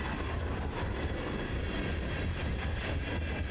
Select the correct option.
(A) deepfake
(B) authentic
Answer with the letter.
B